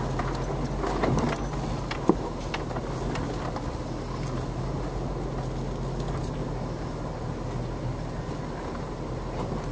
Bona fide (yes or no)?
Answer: yes